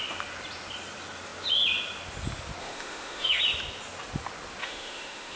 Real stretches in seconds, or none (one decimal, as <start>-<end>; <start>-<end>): 0.0-2.6; 3.4-4.6